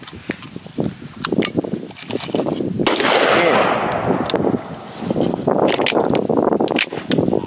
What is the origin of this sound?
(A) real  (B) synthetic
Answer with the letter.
A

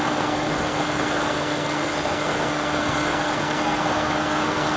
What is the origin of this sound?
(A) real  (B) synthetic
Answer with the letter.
B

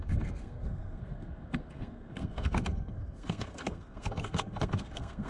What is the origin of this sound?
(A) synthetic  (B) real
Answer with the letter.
A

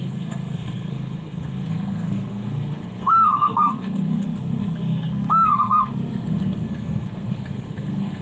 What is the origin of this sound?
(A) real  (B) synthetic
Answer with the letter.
B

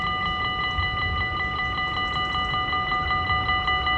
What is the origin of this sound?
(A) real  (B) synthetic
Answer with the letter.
A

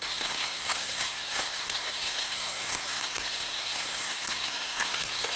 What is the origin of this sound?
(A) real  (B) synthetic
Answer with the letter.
B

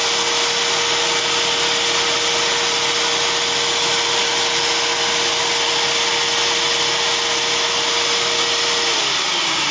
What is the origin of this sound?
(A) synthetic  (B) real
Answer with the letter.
B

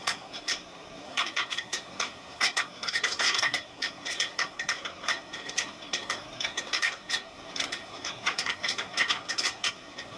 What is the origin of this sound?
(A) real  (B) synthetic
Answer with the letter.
B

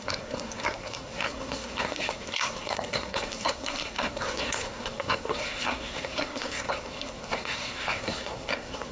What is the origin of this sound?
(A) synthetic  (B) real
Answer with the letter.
A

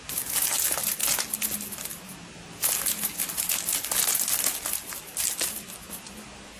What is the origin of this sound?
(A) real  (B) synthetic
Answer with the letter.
A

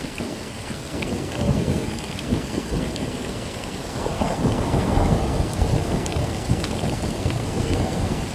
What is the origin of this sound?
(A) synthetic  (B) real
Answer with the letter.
A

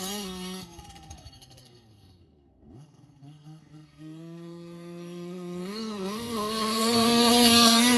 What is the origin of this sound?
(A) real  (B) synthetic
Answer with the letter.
B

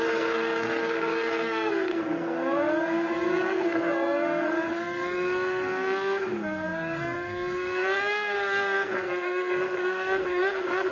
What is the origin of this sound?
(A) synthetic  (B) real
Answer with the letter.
A